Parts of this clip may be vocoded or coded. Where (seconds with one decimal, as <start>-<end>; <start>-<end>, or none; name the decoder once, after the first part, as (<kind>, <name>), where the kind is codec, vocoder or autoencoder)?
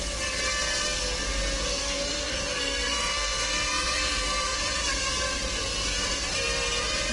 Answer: 1.8-4.6 (codec, SNAC)